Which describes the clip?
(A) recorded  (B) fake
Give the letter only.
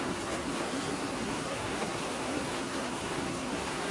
B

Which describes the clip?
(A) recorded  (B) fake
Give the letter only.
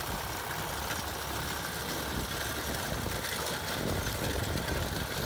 A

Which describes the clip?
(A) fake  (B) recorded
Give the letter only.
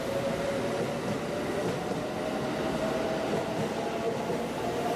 B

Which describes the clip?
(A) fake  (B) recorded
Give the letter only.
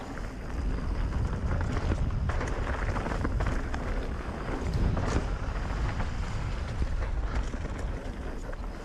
B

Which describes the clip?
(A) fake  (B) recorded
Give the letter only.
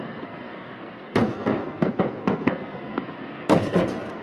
A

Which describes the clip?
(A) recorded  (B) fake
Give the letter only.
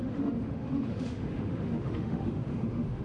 B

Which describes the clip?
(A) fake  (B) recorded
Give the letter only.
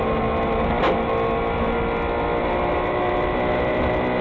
B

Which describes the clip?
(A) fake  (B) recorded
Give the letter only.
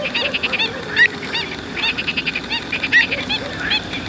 B